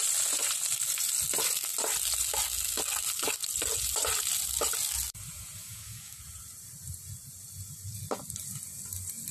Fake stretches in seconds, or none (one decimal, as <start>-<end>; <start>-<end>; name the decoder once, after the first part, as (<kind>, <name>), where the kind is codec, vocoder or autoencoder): 5.6-6.2 (codec, DAC)